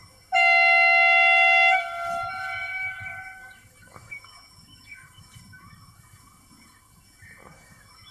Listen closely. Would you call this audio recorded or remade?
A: remade